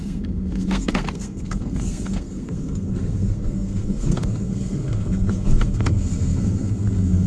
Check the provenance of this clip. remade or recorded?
remade